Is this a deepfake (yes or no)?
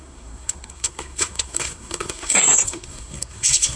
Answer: yes